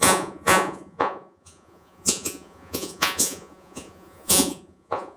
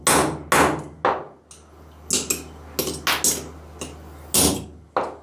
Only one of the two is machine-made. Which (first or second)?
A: first